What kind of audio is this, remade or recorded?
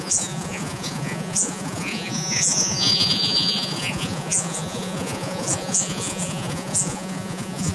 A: remade